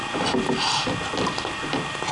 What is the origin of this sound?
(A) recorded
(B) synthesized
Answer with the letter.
A